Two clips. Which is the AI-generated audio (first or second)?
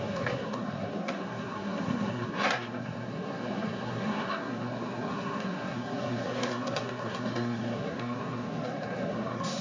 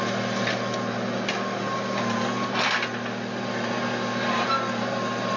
first